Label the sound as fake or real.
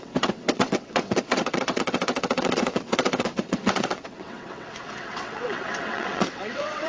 fake